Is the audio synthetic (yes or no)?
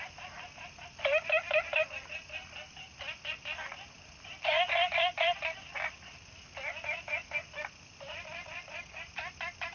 no